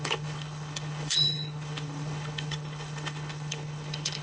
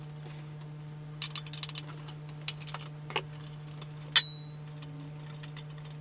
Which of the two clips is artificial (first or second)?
first